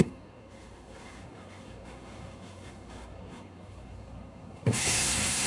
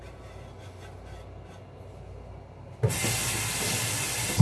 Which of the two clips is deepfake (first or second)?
first